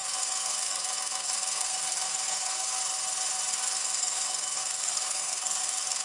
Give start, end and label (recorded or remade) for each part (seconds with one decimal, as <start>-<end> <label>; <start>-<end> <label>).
0.0-2.8 remade; 2.8-3.5 recorded; 3.5-6.0 remade